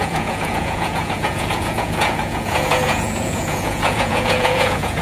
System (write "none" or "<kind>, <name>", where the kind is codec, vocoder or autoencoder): vocoder, Vocos